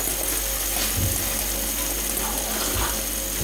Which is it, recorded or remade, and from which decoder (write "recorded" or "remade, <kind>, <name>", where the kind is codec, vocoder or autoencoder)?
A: recorded